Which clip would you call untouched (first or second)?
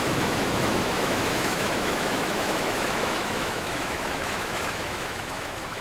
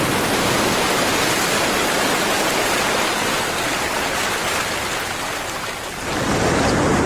second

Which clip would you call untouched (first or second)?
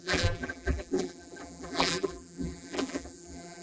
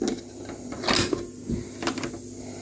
second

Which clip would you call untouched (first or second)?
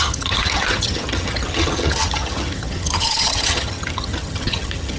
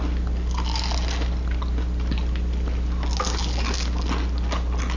second